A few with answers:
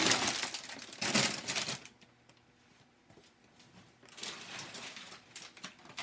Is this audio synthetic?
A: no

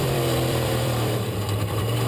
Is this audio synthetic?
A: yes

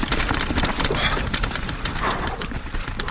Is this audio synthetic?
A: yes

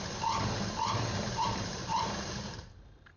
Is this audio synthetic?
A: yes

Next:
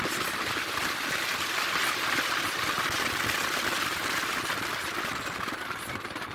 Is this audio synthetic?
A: no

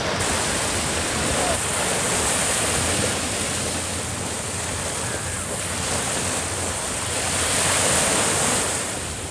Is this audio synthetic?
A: yes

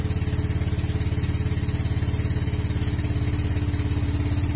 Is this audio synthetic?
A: no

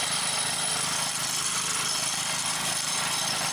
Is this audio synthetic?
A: yes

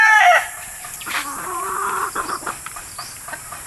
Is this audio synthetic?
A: yes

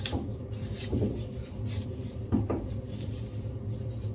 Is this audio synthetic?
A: yes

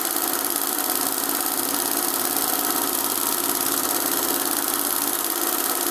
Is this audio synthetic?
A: no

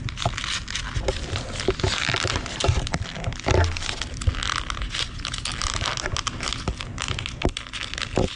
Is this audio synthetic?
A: no